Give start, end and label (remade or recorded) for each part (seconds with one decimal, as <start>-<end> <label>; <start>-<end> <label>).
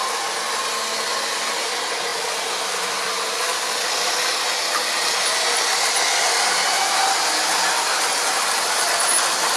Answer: 0.0-9.6 recorded